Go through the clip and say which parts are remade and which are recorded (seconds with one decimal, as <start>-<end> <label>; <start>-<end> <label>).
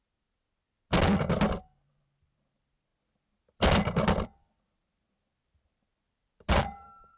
0.0-1.9 recorded; 1.9-7.2 remade